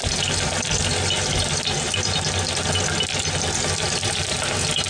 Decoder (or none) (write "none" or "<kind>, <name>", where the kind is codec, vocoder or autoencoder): none